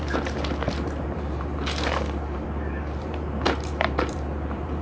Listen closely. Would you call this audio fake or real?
fake